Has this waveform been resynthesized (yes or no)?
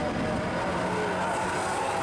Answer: no